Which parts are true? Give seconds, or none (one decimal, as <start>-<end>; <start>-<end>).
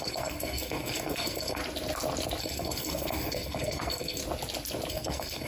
1.6-2.4; 4.2-4.9